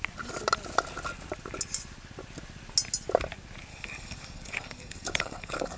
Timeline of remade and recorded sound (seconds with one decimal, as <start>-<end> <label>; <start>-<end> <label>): 0.0-3.7 recorded; 3.7-5.8 remade